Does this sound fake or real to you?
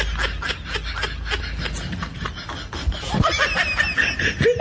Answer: real